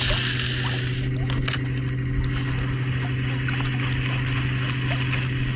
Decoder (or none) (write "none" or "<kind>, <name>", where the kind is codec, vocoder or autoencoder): none